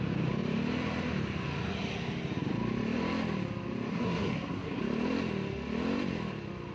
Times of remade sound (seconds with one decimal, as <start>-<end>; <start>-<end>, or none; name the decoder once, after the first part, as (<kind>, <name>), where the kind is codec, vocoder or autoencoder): 3.9-4.8 (codec, SNAC)